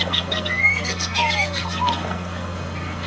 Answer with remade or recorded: remade